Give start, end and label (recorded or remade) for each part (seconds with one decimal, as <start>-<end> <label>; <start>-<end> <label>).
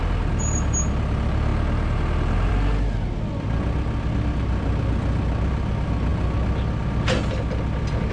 0.0-8.1 recorded